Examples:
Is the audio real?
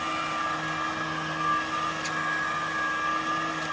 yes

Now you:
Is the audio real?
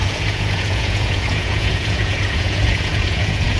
no